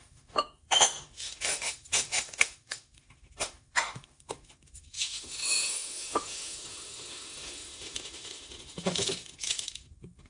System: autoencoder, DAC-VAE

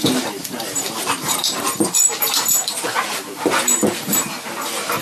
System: vocoder, BigVGAN v2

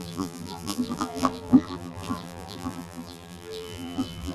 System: vocoder, BigVGAN v2